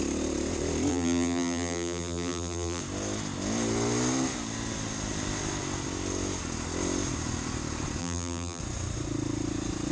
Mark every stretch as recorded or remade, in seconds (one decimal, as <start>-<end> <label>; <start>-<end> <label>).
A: 0.0-0.9 recorded; 0.9-2.8 remade; 2.8-8.0 recorded; 8.0-8.6 remade; 8.6-9.9 recorded